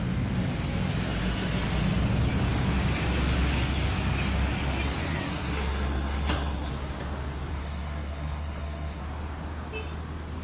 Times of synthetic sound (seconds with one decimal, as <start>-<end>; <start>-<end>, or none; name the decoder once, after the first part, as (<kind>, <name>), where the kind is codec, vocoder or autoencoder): 5.1-6.7 (codec, SNAC); 7.5-9.0

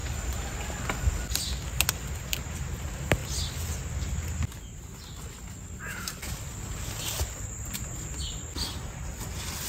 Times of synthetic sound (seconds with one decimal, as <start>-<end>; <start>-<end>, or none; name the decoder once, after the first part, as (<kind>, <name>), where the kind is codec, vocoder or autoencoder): none